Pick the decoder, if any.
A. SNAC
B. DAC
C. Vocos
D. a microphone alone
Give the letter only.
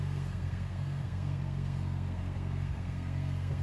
A